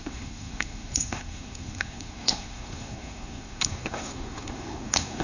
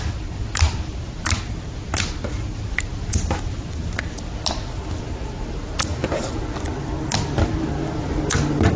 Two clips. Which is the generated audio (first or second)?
first